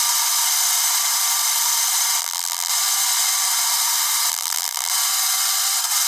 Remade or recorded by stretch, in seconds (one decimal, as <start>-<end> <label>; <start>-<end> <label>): 0.0-2.2 recorded; 2.2-2.7 remade; 2.7-4.3 recorded; 4.3-4.9 remade; 4.9-6.1 recorded